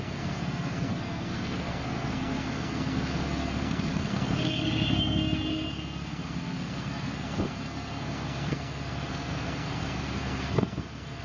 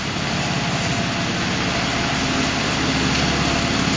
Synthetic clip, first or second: first